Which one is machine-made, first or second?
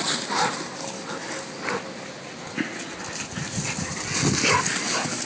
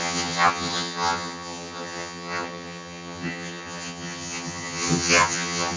second